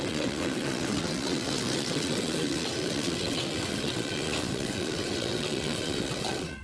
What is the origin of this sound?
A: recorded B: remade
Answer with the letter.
B